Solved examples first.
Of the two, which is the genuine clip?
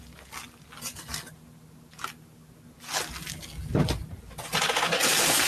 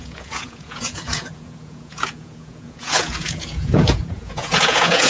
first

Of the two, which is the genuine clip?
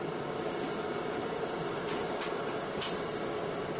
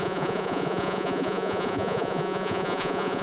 first